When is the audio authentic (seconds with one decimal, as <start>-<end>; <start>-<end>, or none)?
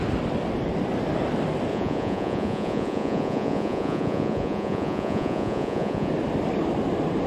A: 0.0-1.7; 6.1-7.3